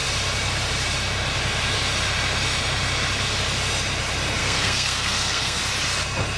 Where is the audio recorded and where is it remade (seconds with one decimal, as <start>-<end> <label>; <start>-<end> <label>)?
0.0-4.4 recorded; 4.4-5.6 remade; 5.6-6.4 recorded